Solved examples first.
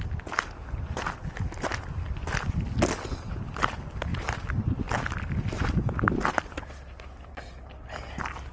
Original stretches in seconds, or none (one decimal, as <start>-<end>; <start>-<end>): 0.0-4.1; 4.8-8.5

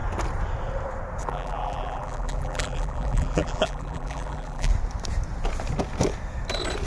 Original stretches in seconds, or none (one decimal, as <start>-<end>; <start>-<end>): 0.0-1.2; 4.7-6.9

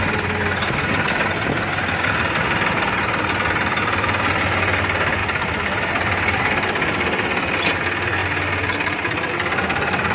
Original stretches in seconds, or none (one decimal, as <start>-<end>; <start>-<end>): 0.0-5.2; 5.9-10.1

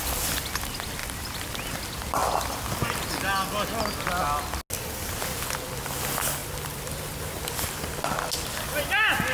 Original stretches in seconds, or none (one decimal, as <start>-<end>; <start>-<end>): 0.0-1.0; 1.7-6.4; 7.4-9.3

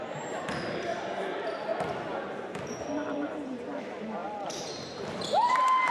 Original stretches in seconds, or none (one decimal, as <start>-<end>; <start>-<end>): 1.7-2.3

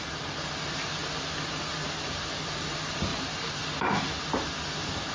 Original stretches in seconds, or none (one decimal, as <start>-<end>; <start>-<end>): 0.0-3.1; 3.6-5.1

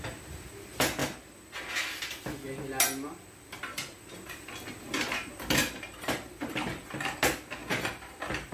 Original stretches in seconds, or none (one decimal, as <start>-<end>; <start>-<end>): 0.0-3.7; 4.3-5.6; 6.9-7.6

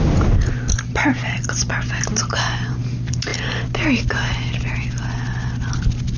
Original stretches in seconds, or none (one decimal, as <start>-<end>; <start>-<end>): 0.0-2.1; 2.8-6.2